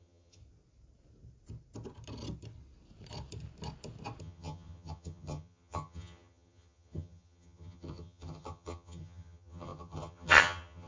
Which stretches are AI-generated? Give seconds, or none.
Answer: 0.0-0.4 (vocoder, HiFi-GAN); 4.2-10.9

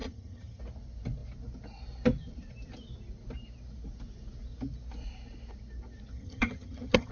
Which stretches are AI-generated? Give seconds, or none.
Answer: 0.0-0.6 (vocoder, HiFi-GAN); 6.1-7.1